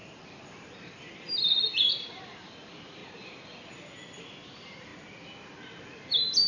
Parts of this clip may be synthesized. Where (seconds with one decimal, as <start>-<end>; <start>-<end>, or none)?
0.0-3.0; 4.2-4.9